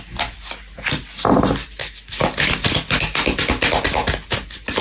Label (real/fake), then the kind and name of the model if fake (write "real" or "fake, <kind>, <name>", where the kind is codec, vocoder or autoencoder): real